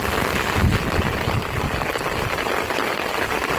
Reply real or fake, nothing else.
real